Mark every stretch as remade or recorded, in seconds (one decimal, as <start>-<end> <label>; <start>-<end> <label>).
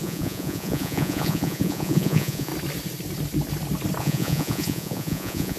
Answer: 0.0-2.5 remade; 2.5-4.0 recorded; 4.0-5.6 remade